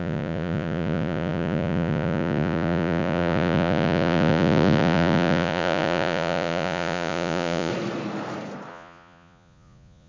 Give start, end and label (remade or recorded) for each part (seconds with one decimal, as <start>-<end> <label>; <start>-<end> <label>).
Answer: 0.0-7.7 remade; 7.7-8.7 recorded; 8.7-10.1 remade